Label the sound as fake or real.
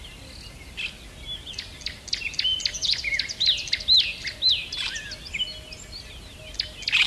real